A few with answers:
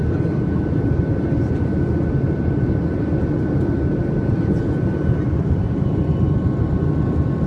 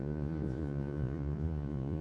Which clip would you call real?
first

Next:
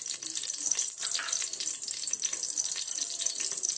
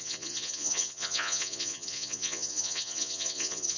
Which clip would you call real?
first